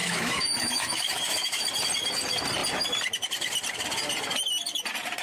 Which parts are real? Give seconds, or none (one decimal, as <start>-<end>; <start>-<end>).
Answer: 1.6-5.2